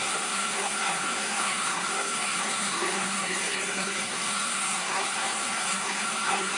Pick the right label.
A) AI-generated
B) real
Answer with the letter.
A